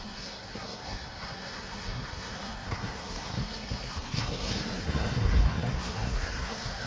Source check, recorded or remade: remade